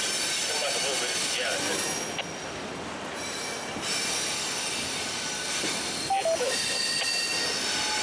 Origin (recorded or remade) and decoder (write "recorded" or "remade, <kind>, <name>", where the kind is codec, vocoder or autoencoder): recorded